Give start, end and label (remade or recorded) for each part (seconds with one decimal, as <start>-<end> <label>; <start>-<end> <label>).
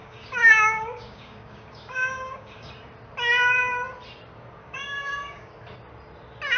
0.0-2.7 remade; 2.7-4.6 recorded; 4.6-5.5 remade; 5.5-6.6 recorded